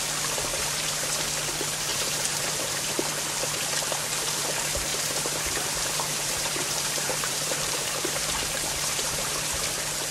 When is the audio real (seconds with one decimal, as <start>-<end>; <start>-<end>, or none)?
0.0-0.5; 1.2-1.9; 2.9-4.9; 9.6-10.1